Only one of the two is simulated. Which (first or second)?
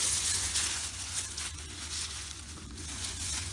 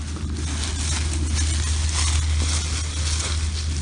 first